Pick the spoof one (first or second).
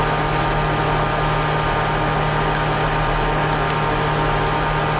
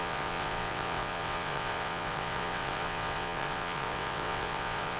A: second